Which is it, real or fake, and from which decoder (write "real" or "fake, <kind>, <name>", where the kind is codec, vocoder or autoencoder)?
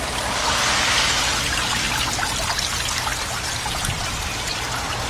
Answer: real